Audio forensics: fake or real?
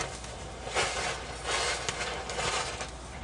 real